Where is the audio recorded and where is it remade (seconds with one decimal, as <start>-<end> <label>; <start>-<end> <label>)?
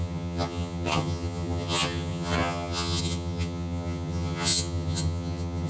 0.0-5.7 remade